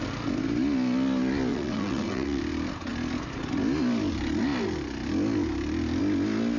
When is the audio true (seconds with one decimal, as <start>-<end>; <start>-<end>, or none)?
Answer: 0.0-1.5; 2.4-6.6